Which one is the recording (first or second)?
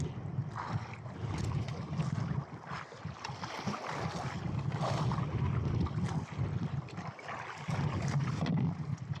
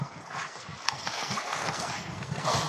first